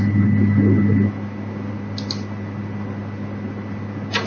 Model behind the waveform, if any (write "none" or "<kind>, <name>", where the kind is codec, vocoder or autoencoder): none